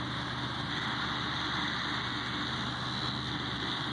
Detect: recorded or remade recorded